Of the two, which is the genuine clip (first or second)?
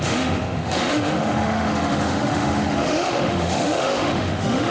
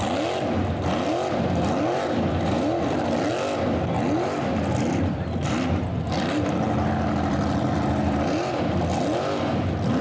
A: second